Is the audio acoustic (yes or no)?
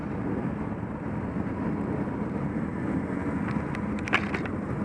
yes